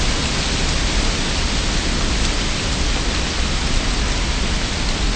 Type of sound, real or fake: real